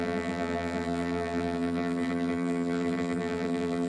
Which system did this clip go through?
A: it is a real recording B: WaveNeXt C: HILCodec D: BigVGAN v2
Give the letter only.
D